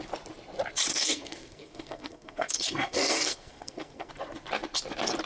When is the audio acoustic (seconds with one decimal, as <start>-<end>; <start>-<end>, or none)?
0.0-0.9; 4.1-5.3